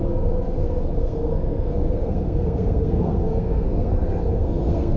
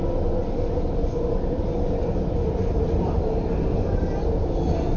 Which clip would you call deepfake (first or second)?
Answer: first